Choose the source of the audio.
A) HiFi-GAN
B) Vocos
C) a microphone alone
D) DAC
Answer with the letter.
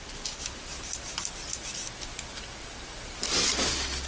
C